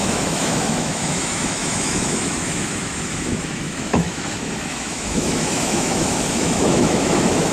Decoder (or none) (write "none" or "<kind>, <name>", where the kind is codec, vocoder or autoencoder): autoencoder, DAC-VAE